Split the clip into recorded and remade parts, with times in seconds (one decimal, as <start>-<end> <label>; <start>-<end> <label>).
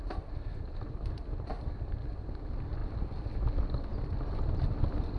0.0-5.2 recorded